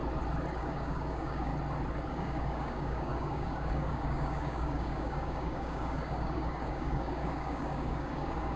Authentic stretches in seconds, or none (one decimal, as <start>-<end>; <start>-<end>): 0.0-0.6; 1.5-2.1